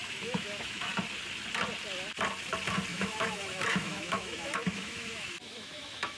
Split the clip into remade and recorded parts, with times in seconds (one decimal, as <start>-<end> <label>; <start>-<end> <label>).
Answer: 0.0-0.9 remade; 0.9-2.9 recorded; 2.9-6.2 remade